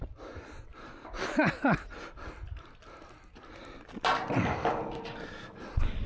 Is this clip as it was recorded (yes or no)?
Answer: yes